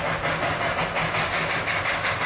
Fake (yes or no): no